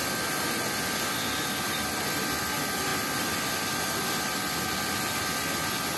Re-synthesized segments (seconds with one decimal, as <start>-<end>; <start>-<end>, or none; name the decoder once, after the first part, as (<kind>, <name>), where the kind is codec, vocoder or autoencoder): 2.9-4.1 (vocoder, BigVGAN v2)